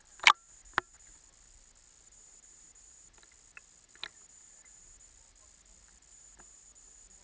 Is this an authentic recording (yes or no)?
yes